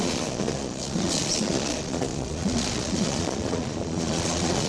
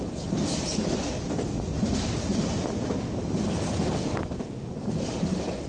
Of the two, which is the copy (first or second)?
first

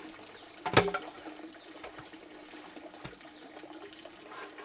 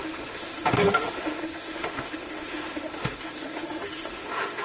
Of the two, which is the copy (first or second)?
second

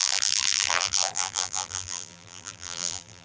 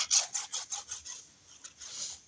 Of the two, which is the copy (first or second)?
first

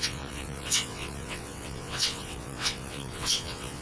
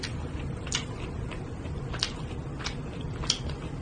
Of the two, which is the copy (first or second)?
first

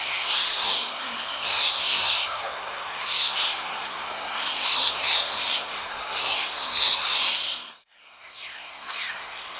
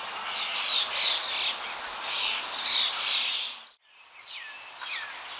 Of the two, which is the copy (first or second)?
first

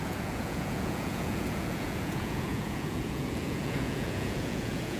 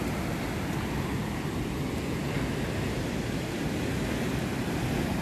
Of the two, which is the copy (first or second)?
first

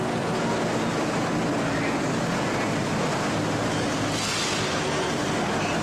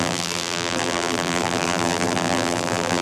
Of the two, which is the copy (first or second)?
second